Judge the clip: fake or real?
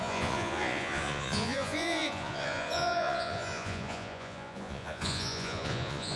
fake